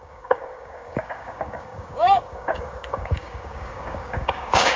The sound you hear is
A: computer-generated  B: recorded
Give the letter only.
A